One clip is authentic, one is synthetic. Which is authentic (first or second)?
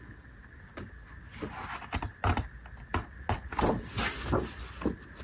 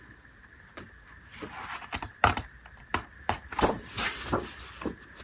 first